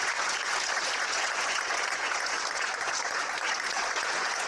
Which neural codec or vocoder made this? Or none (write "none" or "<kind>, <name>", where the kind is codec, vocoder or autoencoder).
vocoder, Vocos